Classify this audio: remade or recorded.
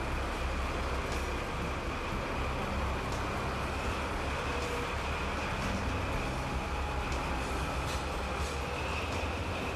recorded